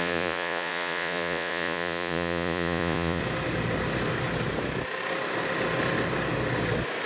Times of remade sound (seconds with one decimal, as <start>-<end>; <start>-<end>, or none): 0.0-3.2

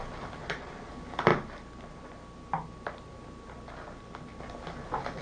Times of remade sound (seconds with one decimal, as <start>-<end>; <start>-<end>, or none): 0.4-0.9

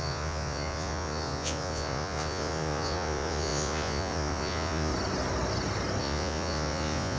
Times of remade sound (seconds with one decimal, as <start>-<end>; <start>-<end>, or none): 0.0-4.9; 6.0-7.2

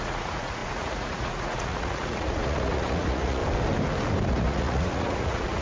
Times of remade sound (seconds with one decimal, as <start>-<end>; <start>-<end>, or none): 0.0-3.4; 4.3-5.6

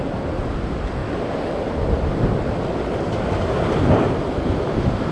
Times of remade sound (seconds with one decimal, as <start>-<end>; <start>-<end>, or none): none